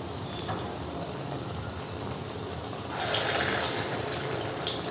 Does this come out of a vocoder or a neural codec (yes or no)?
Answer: yes